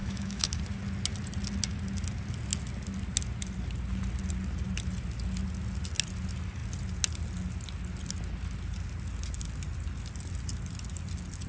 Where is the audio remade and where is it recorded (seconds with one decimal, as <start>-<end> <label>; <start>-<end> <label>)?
0.0-0.6 remade; 0.6-11.5 recorded